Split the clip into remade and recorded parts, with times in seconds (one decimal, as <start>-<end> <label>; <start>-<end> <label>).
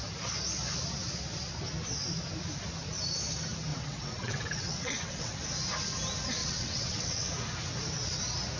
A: 0.0-3.7 recorded; 3.7-5.3 remade; 5.3-6.4 recorded; 6.4-7.3 remade; 7.3-8.6 recorded